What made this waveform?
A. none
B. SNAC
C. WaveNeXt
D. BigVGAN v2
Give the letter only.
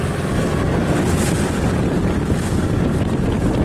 A